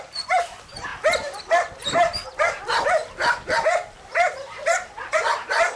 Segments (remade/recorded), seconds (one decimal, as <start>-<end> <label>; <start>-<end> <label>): 0.0-5.8 recorded